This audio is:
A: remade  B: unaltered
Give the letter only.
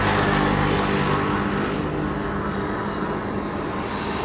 B